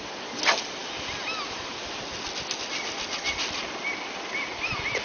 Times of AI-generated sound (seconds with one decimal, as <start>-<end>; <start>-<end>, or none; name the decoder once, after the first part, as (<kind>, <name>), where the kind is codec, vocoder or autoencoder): none

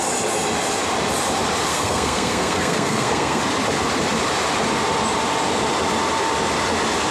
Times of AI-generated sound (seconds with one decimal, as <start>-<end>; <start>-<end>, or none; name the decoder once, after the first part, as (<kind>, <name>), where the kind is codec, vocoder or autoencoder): 1.7-3.4 (codec, SNAC)